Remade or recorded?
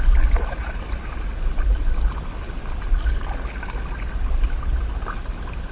recorded